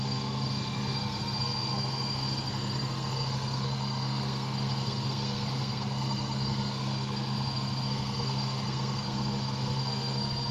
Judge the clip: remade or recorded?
remade